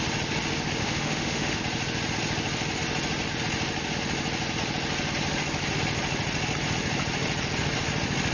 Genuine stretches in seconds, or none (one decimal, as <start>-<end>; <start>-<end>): 0.0-0.8; 1.6-8.3